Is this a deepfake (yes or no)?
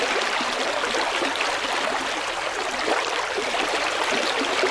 no